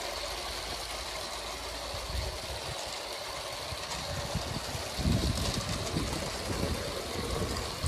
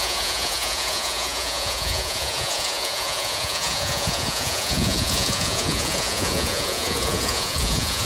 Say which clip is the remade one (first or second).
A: second